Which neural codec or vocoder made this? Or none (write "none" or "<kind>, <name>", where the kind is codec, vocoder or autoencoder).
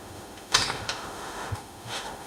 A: autoencoder, DAC-VAE